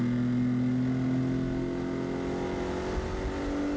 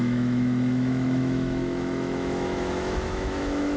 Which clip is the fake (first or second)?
second